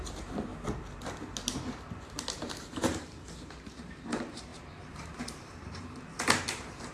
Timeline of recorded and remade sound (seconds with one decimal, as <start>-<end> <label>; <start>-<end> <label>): 0.0-0.5 remade; 0.5-2.4 recorded; 2.4-6.9 remade

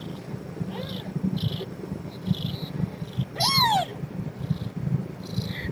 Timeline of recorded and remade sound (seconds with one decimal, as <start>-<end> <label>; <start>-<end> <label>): 0.0-1.6 recorded; 1.6-2.5 remade; 2.5-5.7 recorded

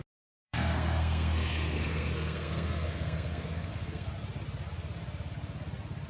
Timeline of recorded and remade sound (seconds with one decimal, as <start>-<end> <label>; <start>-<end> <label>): 0.0-0.4 recorded; 0.4-4.1 remade; 4.1-6.1 recorded

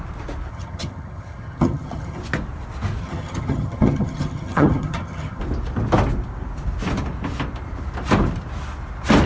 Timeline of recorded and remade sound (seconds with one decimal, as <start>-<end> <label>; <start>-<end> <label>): 0.0-0.5 recorded; 0.5-2.2 remade; 2.2-3.0 recorded; 3.0-5.4 remade; 5.4-9.3 recorded

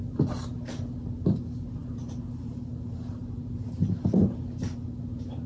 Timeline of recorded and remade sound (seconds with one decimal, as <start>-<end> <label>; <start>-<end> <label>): 0.0-1.8 recorded; 1.8-2.6 remade; 2.6-5.5 recorded

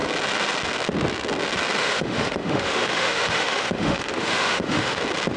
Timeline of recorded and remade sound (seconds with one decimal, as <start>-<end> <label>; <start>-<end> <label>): 0.0-1.8 recorded; 1.8-5.0 remade; 5.0-5.4 recorded

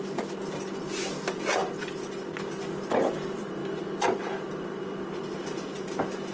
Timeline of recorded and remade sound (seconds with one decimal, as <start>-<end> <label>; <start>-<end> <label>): 0.0-6.3 recorded